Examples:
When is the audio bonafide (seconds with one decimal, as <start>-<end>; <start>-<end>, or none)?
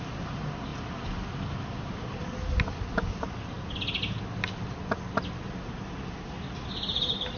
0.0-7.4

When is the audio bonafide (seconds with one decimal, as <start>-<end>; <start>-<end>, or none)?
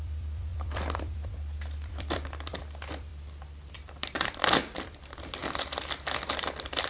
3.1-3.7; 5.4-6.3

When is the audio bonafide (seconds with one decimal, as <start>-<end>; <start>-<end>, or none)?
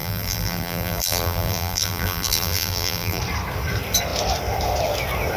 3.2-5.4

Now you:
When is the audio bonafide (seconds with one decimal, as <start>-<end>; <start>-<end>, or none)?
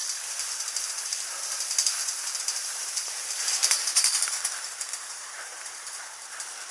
1.3-2.0; 6.0-6.7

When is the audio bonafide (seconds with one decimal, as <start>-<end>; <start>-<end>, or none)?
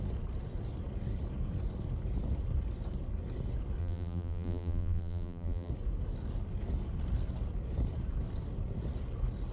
0.0-3.8; 5.7-9.5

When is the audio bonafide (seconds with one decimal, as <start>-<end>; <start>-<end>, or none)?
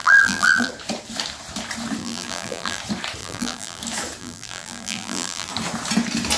0.7-2.0; 2.8-3.2; 3.8-4.2; 5.5-6.4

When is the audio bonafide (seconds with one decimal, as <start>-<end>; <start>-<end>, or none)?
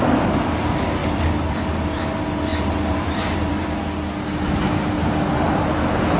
0.0-1.0; 1.6-2.5; 3.8-6.2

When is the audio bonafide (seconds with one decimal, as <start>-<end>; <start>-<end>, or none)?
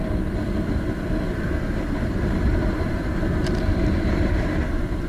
0.0-0.7